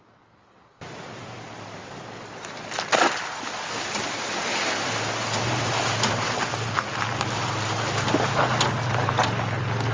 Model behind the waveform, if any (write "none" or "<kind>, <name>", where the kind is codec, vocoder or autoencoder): none